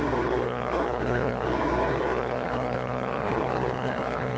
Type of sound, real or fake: fake